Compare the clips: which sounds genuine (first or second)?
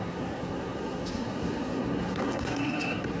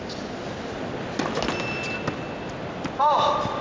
second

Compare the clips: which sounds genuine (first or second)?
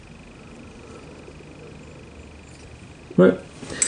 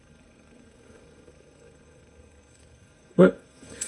first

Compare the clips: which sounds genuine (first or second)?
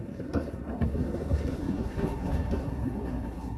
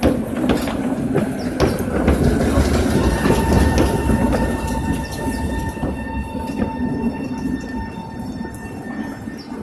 second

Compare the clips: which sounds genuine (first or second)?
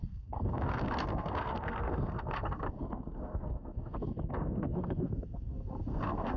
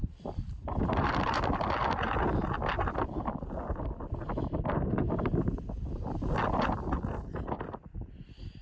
second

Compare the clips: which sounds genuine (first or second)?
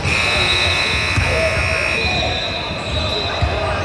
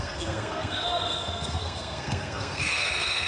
first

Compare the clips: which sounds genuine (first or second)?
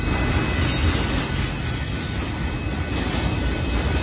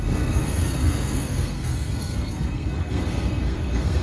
first